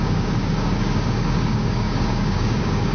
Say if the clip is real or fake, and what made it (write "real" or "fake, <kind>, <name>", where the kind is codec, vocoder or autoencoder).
fake, codec, DAC